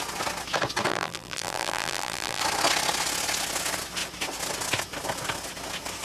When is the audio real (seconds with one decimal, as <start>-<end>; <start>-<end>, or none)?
0.0-0.9; 2.4-6.0

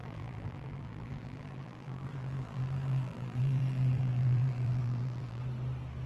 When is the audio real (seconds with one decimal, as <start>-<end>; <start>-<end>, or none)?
5.4-6.1